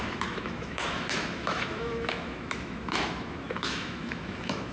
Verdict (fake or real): fake